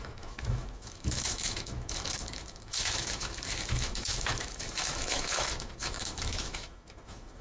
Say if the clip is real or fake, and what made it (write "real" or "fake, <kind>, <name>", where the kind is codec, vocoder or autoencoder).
fake, autoencoder, DAC-VAE